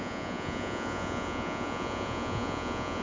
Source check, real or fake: fake